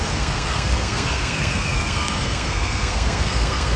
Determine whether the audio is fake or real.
fake